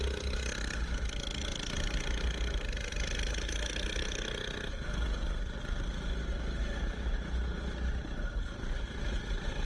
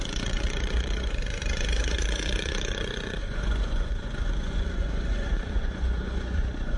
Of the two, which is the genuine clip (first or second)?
first